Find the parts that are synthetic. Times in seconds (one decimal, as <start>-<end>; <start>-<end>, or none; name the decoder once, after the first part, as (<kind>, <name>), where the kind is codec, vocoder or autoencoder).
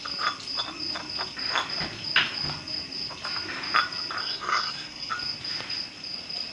4.2-5.1 (codec, SNAC)